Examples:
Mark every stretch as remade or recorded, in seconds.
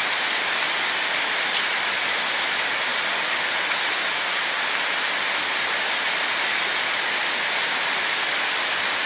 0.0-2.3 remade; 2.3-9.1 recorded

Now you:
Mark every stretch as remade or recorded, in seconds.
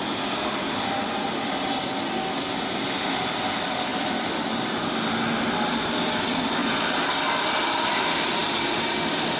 0.0-9.4 recorded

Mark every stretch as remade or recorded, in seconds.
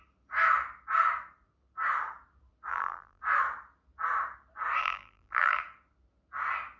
0.0-2.7 recorded; 2.7-3.2 remade; 3.2-4.8 recorded; 4.8-5.6 remade; 5.6-6.8 recorded